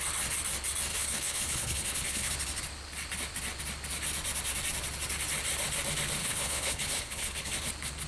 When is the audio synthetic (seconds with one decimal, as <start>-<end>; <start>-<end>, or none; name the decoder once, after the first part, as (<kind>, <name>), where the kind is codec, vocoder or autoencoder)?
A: 0.9-2.3 (codec, HILCodec); 6.2-7.5